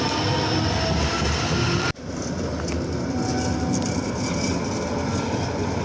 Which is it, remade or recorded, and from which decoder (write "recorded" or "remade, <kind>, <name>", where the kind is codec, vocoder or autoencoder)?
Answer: recorded